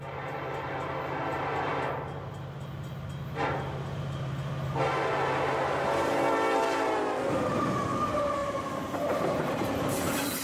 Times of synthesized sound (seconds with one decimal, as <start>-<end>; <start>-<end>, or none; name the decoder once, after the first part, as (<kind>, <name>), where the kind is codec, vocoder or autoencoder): 0.0-1.7 (vocoder, BigVGAN v2); 6.3-10.4